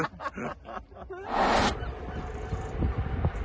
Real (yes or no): yes